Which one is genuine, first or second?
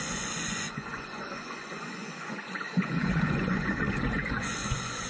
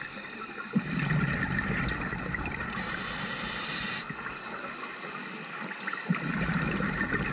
second